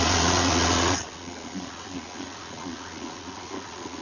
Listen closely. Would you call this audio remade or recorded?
remade